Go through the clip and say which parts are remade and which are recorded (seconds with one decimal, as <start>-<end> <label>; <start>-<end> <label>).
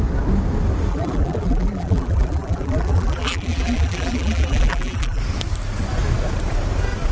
0.0-0.9 recorded; 0.9-5.2 remade; 5.2-7.1 recorded